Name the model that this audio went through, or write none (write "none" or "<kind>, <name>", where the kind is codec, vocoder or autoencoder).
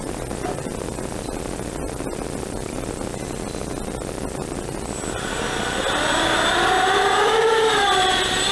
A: none